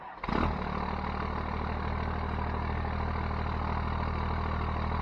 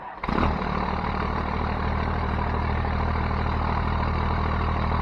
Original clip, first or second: first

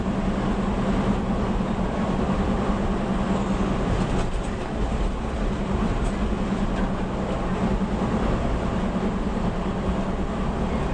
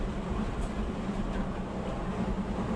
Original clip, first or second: first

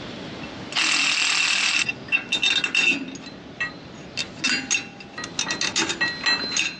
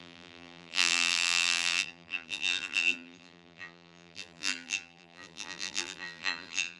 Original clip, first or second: first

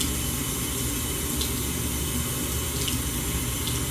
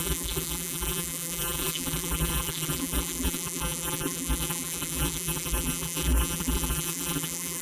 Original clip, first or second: first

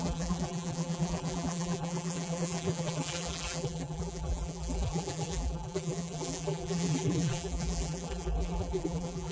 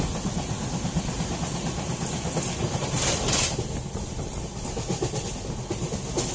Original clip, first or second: second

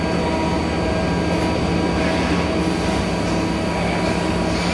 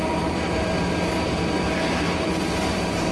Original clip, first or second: first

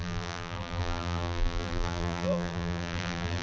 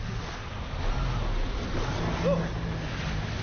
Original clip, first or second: second